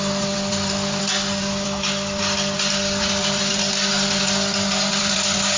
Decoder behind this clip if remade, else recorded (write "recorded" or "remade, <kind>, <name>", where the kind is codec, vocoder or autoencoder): recorded